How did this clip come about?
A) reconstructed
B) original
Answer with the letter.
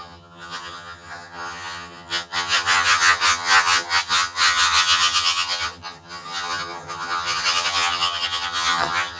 A